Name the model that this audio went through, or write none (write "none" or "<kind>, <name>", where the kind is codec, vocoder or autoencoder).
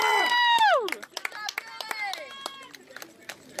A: none